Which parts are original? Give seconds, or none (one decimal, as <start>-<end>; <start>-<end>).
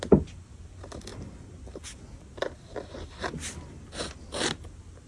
0.0-5.1